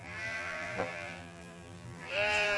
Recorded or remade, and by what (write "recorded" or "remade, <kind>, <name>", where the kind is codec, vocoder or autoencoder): remade, vocoder, BigVGAN v2